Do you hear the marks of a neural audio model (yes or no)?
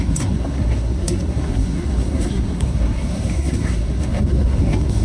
yes